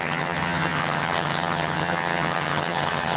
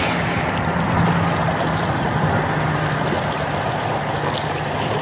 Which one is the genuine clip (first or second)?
second